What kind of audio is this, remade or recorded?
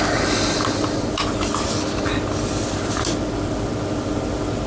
recorded